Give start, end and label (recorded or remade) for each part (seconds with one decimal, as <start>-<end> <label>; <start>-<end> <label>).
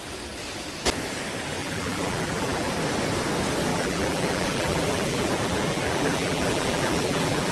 0.0-1.6 recorded; 1.6-2.7 remade; 2.7-3.7 recorded; 3.7-7.5 remade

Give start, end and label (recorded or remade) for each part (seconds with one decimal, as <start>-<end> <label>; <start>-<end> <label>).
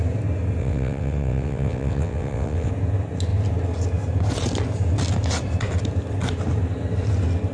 0.0-0.6 recorded; 0.6-2.7 remade; 2.7-7.5 recorded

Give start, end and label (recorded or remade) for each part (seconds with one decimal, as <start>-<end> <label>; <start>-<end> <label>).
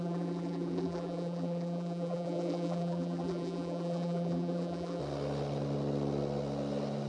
0.0-5.0 remade; 5.0-7.1 recorded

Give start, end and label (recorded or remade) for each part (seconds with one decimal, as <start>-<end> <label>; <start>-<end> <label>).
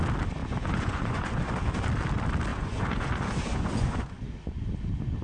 0.0-0.4 recorded; 0.4-1.5 remade; 1.5-2.5 recorded; 2.5-3.1 remade; 3.1-3.5 recorded; 3.5-4.2 remade; 4.2-5.2 recorded